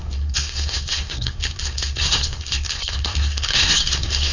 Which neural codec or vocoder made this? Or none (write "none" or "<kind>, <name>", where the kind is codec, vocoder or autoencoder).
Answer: codec, SNAC